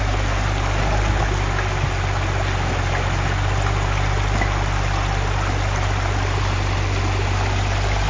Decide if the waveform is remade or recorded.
recorded